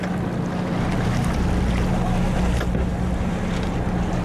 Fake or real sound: real